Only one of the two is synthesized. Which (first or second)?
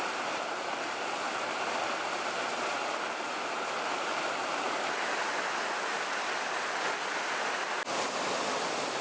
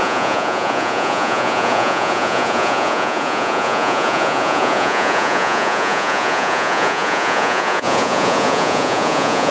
second